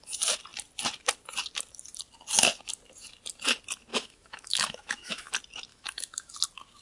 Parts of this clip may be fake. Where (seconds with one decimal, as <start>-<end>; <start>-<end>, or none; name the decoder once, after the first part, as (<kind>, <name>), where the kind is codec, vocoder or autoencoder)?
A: 3.9-5.3 (autoencoder, DAC-VAE); 5.7-6.3